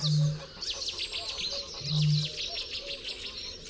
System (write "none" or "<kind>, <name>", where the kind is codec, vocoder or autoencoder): none